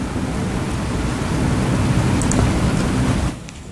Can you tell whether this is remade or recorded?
recorded